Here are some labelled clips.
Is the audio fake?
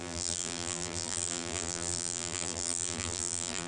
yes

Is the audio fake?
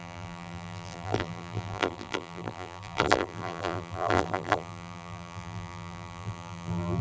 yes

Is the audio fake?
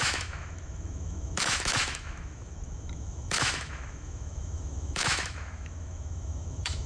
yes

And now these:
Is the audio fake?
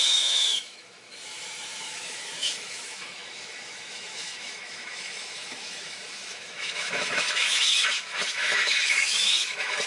yes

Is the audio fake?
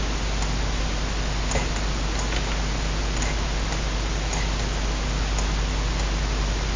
no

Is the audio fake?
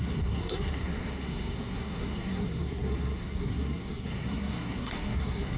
yes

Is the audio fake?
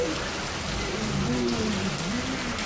no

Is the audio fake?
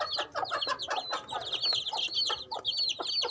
no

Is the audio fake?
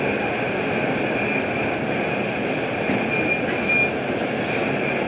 no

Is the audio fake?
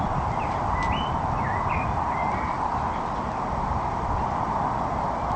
yes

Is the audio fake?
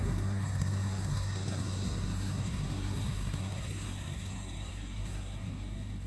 yes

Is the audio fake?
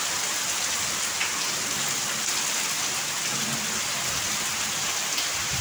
no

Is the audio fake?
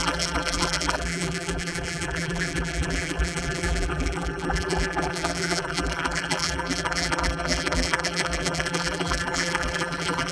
yes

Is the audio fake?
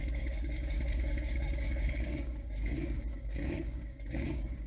yes